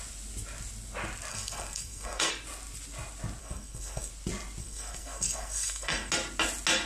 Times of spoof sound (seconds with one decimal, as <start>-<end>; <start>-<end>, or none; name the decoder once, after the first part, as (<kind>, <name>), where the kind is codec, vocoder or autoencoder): 1.3-2.3 (codec, SNAC); 3.4-4.1; 4.6-6.1